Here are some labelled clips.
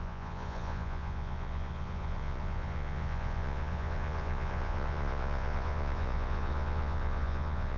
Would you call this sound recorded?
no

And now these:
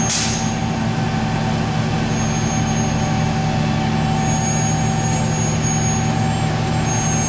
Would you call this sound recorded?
yes